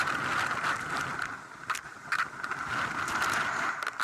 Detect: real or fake real